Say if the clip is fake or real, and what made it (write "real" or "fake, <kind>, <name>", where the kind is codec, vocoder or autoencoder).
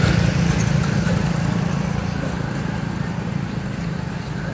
real